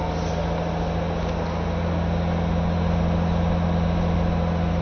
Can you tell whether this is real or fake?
real